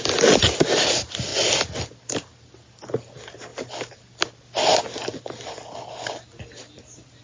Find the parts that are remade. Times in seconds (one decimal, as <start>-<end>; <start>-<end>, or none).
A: none

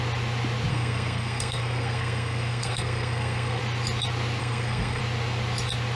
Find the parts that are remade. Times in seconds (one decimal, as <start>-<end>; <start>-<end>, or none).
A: 0.7-3.6; 4.4-5.0